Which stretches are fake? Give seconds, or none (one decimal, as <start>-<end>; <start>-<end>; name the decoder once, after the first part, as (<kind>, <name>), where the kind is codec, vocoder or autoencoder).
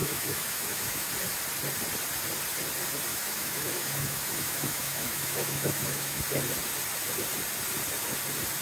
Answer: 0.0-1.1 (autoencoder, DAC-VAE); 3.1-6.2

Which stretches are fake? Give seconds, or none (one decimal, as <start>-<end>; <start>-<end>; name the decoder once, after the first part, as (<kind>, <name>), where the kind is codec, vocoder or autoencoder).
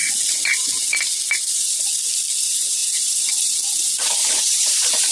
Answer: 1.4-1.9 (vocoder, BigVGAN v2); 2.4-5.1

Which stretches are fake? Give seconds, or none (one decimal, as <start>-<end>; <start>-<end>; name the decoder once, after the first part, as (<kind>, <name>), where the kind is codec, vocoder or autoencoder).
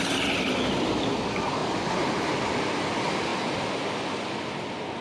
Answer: none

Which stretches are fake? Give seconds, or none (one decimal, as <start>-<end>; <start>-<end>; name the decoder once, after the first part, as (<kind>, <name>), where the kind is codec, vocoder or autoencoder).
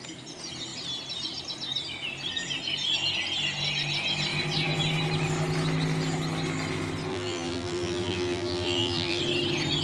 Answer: 7.1-9.2 (vocoder, BigVGAN v2)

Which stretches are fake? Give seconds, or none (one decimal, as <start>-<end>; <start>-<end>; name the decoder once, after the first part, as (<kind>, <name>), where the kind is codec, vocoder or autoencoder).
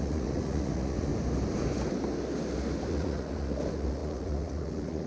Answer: 0.0-1.1 (vocoder, Vocos); 2.9-5.1